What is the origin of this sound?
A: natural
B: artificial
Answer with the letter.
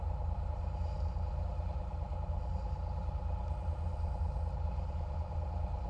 A